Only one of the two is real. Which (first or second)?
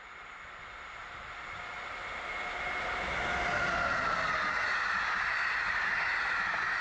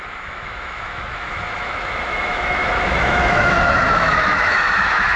first